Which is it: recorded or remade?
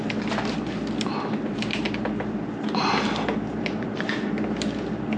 recorded